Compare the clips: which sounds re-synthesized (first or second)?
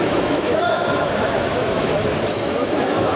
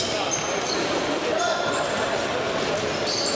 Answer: first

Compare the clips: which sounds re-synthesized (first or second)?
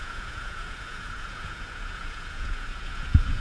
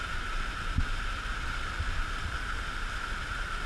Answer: first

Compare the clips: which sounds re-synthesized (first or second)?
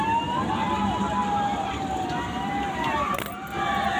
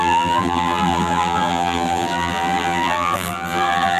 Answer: second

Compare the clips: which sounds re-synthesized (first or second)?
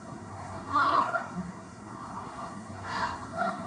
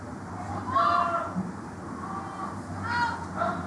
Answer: first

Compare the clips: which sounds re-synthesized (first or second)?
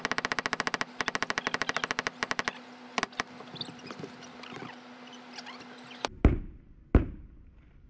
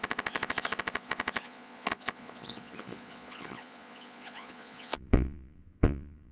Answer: second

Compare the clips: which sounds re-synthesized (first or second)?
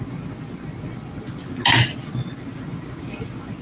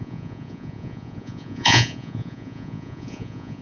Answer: second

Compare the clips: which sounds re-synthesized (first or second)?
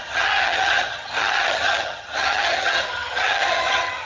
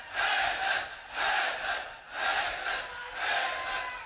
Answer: first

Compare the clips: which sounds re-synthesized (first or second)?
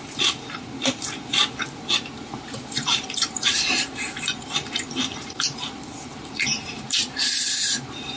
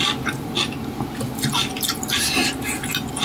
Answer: first